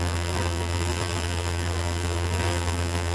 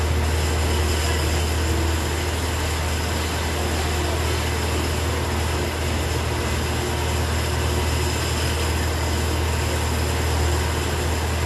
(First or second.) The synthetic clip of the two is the first